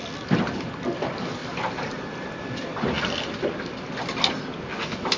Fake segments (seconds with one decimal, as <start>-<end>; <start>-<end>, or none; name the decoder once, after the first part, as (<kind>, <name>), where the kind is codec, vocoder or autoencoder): none